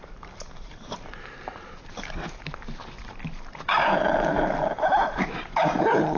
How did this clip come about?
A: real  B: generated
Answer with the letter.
B